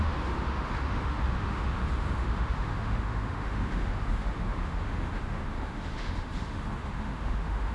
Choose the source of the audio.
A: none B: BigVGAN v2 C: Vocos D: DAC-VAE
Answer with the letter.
D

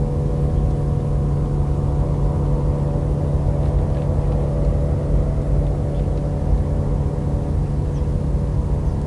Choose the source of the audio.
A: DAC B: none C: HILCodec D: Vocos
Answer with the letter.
B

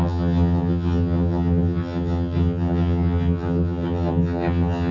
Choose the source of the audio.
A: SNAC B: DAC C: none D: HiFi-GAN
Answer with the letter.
D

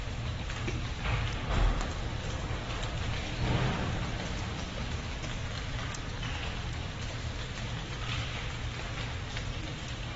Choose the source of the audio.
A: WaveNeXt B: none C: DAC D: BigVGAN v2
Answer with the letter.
B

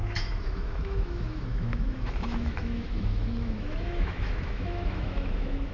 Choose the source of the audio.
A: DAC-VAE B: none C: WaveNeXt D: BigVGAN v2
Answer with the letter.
A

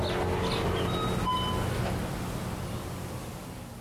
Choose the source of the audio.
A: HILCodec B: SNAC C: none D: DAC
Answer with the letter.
C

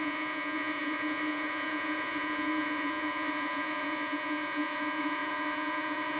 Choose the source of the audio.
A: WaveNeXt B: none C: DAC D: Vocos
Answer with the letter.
D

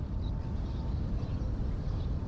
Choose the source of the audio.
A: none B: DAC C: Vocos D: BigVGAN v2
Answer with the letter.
D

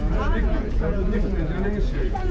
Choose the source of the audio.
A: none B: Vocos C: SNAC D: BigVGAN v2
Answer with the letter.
B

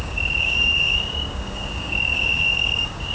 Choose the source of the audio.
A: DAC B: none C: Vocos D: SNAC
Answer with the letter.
A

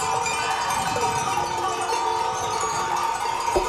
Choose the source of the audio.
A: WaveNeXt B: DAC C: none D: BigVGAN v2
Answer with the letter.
D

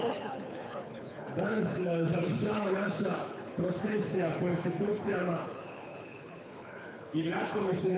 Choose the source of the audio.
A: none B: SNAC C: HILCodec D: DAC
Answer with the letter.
C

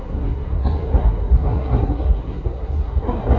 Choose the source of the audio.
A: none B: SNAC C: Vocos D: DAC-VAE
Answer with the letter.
B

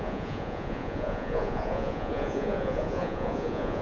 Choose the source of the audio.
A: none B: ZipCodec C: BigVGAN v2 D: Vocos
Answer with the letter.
D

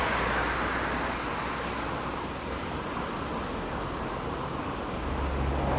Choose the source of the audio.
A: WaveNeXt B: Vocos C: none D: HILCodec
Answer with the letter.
C